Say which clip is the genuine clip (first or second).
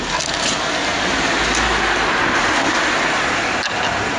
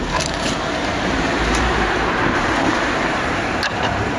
first